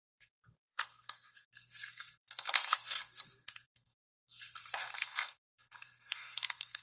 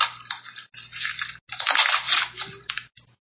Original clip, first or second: second